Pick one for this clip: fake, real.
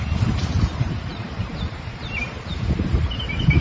fake